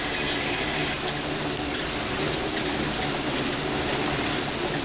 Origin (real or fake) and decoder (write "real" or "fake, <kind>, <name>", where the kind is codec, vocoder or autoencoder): real